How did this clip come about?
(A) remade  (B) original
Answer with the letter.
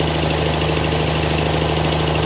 B